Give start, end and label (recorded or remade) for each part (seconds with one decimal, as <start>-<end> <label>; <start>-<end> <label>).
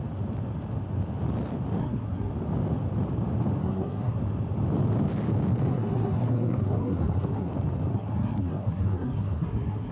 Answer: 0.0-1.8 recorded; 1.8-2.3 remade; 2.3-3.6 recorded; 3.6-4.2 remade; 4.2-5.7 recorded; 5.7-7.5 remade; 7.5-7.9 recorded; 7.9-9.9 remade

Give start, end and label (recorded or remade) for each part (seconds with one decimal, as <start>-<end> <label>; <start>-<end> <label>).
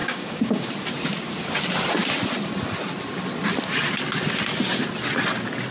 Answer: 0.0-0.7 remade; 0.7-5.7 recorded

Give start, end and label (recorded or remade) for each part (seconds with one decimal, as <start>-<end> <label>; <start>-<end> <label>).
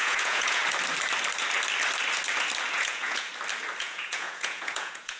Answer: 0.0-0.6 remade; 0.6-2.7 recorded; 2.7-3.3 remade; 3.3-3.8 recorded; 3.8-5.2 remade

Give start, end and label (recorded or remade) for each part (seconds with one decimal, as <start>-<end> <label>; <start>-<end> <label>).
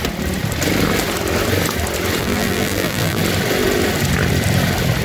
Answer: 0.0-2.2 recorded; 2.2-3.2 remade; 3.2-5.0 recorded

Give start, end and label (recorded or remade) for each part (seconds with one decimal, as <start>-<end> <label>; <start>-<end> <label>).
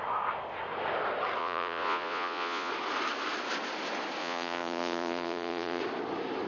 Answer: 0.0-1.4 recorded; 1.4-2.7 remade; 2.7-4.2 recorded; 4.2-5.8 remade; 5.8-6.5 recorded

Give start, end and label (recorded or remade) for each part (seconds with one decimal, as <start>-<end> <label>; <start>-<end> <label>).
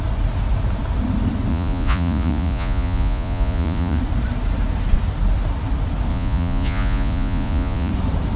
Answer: 0.0-1.5 recorded; 1.5-4.0 remade; 4.0-6.1 recorded; 6.1-7.9 remade; 7.9-8.4 recorded